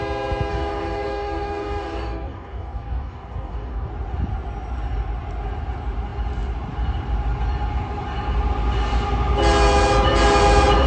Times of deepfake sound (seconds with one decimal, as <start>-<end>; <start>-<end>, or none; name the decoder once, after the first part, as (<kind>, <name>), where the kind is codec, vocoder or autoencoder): 0.5-3.9 (codec, DAC)